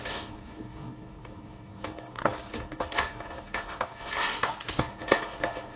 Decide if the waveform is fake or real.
fake